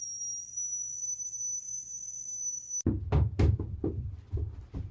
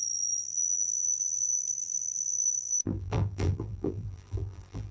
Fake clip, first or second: second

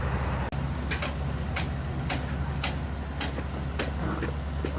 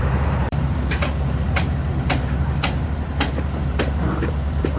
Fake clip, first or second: second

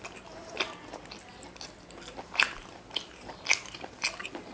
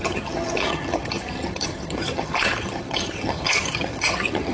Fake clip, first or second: second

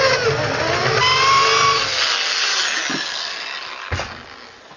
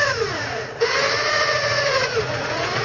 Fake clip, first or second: second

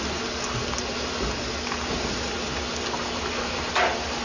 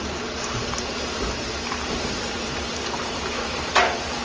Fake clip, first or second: second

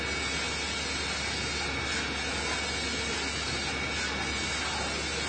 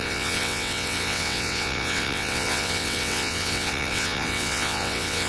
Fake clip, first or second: second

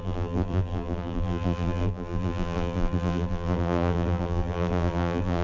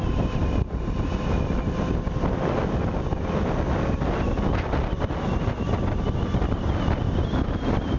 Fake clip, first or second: first